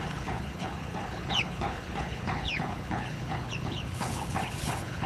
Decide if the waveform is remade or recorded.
remade